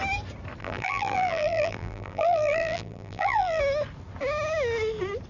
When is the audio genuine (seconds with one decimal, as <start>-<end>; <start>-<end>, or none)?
0.0-0.6; 3.6-5.3